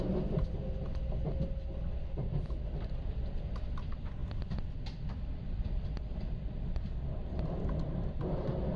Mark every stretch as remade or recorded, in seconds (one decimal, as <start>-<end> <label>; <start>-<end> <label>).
0.0-8.8 recorded